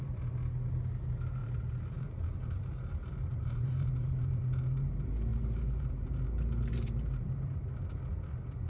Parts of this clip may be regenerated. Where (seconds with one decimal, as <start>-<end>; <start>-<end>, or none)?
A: 1.4-4.4; 5.3-7.7